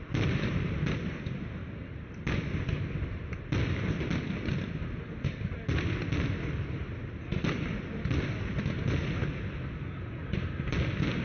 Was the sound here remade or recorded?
recorded